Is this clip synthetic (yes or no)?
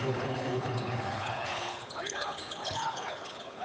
yes